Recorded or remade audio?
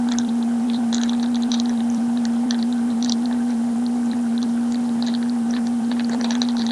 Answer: remade